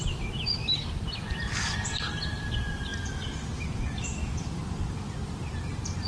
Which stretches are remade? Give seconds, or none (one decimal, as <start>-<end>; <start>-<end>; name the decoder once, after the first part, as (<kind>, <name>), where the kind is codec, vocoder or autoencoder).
none